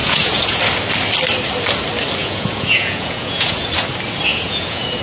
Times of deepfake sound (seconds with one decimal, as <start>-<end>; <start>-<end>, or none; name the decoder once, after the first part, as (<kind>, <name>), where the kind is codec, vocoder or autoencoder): 0.0-0.6 (vocoder, Vocos); 2.2-3.7; 4.3-5.0